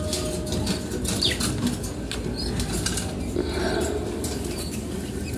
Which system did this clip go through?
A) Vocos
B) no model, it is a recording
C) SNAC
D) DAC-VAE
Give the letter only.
B